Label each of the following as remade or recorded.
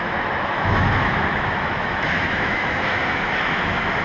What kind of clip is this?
remade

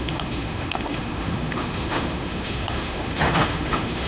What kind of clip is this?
remade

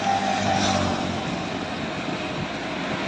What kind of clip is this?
recorded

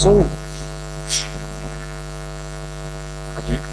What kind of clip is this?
recorded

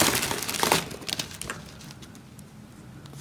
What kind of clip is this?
recorded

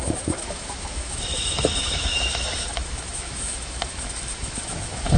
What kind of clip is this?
remade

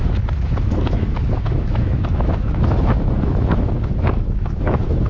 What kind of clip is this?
remade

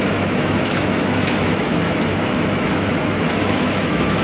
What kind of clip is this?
remade